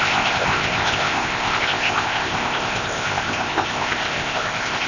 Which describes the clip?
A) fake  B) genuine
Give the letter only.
A